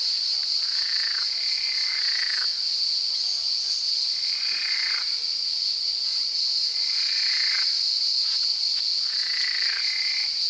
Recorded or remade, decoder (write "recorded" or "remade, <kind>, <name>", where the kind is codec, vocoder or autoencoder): recorded